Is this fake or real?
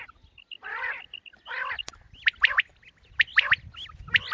real